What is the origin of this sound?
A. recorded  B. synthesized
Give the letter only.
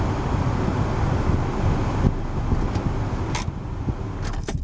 A